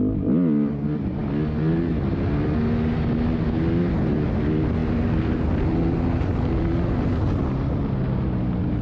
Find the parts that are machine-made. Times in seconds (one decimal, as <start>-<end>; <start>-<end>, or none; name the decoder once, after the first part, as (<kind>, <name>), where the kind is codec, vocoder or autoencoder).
none